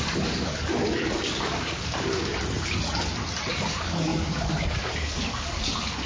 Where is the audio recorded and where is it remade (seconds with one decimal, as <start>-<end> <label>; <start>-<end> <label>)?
0.0-2.3 remade; 2.3-3.5 recorded; 3.5-6.1 remade